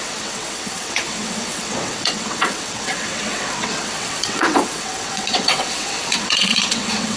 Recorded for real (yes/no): no